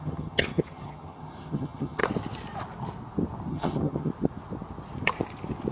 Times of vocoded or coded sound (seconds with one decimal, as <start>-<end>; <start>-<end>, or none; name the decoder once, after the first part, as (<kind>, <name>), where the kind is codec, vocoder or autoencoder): 0.0-2.0 (vocoder, HiFi-GAN); 3.5-4.1